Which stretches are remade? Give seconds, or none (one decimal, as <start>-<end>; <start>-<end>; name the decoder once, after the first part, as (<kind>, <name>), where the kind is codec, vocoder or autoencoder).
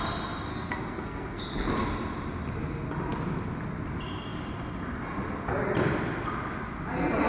0.5-1.4 (codec, SNAC)